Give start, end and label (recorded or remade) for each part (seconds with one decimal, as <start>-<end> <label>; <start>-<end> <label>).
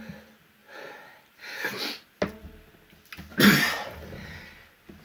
0.0-0.6 recorded; 0.6-1.8 remade; 1.8-3.3 recorded; 3.3-4.3 remade; 4.3-5.0 recorded